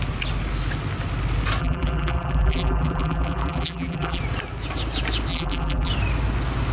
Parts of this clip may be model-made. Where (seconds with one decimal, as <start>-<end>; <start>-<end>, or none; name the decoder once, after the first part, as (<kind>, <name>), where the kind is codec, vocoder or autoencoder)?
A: 1.6-4.2 (vocoder, BigVGAN v2); 5.3-5.9